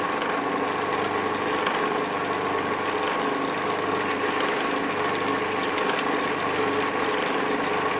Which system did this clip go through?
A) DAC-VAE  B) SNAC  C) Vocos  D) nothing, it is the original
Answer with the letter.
D